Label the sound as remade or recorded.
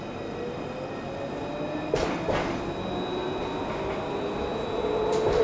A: recorded